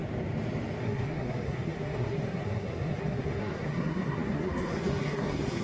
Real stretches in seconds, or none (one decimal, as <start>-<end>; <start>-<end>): 0.0-0.8